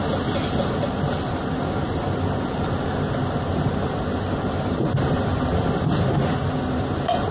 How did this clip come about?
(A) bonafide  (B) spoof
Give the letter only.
A